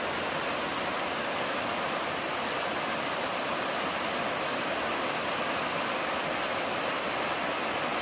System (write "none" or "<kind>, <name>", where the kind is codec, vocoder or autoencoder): none